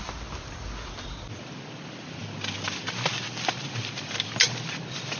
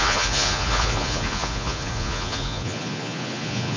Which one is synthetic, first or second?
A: second